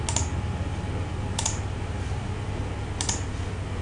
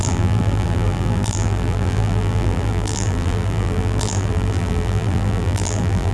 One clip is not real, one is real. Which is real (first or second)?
first